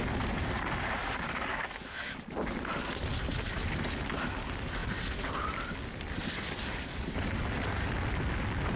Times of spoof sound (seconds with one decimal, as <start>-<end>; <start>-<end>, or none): 1.5-2.1